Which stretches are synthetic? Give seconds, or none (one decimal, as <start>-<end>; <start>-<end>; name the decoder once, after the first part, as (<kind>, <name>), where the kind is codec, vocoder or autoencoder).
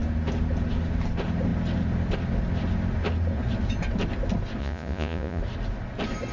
4.6-5.4 (vocoder, Vocos)